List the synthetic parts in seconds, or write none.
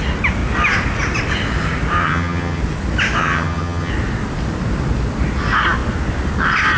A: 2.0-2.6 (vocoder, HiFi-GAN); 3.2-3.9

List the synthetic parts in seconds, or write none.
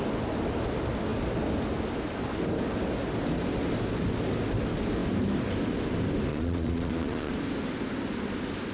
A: 6.3-7.3 (vocoder, Vocos)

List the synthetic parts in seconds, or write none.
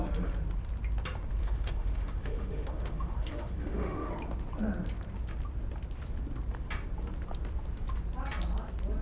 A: 1.4-4.1 (autoencoder, DAC-VAE)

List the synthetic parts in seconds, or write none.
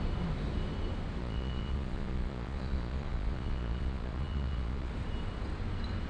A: 1.2-4.9 (vocoder, Vocos)